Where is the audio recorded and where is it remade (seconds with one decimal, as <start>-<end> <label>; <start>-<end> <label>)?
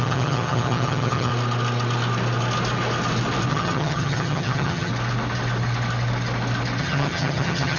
0.0-1.3 remade; 1.3-3.5 recorded; 3.5-4.9 remade; 4.9-6.8 recorded; 6.8-7.8 remade